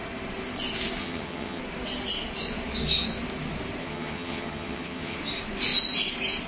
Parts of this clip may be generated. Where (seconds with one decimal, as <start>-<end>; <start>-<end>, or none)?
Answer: 1.0-1.6; 3.8-5.2